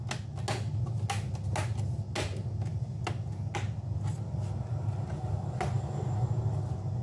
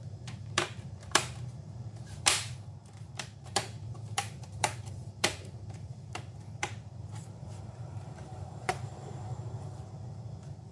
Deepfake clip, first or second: second